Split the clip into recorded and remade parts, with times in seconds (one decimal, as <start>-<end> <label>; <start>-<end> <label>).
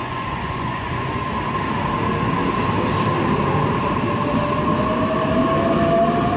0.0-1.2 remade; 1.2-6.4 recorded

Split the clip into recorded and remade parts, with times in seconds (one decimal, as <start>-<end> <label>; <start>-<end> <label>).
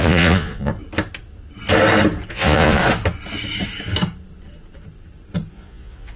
0.0-0.7 remade; 0.7-2.3 recorded; 2.3-2.8 remade; 2.8-5.5 recorded; 5.5-6.2 remade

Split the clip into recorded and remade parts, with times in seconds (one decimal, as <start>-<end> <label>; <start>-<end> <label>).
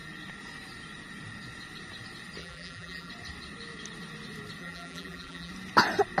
0.0-2.4 recorded; 2.4-3.1 remade; 3.1-4.6 recorded; 4.6-5.5 remade; 5.5-6.2 recorded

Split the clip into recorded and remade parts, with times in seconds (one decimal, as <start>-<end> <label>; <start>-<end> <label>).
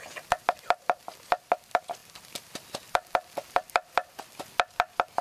0.0-5.2 recorded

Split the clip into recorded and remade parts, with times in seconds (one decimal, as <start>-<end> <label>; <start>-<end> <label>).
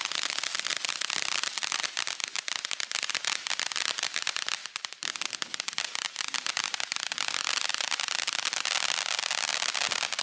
0.0-1.6 recorded; 1.6-2.1 remade; 2.1-10.2 recorded